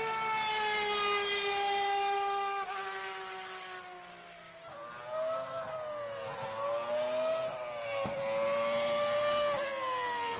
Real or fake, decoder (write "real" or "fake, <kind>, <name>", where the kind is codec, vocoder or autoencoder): real